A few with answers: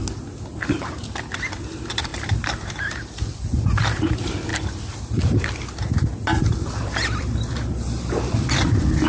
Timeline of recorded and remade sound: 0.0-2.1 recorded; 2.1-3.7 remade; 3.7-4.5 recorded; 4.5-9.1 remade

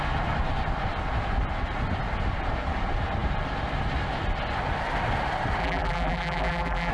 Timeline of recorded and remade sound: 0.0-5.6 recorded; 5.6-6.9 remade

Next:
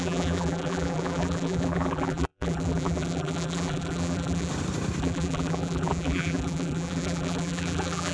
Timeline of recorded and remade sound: 0.0-4.5 remade; 4.5-5.0 recorded; 5.0-8.1 remade

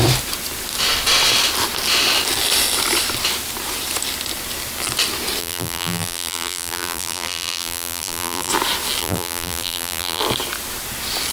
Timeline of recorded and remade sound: 0.0-5.4 recorded; 5.4-8.5 remade; 8.5-9.0 recorded; 9.0-10.2 remade; 10.2-11.3 recorded

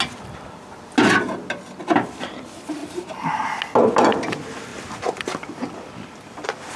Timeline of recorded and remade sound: 0.0-2.8 recorded; 2.8-3.4 remade; 3.4-4.7 recorded; 4.7-6.8 remade

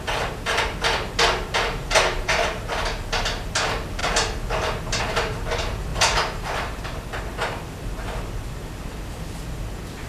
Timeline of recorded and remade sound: 0.0-1.8 recorded; 1.8-2.7 remade; 2.7-5.9 recorded; 5.9-6.8 remade; 6.8-10.1 recorded

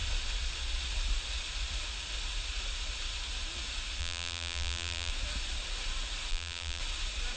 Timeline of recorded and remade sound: 0.0-4.0 recorded; 4.0-5.1 remade; 5.1-6.3 recorded; 6.3-6.8 remade; 6.8-7.4 recorded